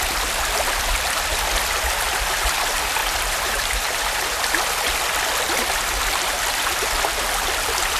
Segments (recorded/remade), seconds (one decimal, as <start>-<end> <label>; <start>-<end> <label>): 0.0-3.0 recorded; 3.0-4.5 remade; 4.5-8.0 recorded